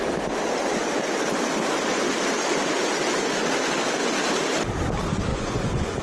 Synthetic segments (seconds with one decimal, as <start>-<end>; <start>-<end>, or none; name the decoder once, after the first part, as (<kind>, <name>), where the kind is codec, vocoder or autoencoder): 5.3-6.0 (vocoder, Vocos)